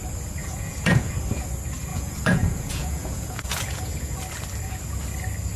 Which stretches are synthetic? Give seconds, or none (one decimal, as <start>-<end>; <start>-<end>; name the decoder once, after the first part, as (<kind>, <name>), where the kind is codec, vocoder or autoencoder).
0.4-1.1 (vocoder, Vocos); 1.9-4.2